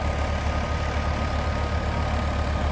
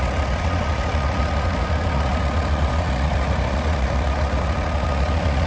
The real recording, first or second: first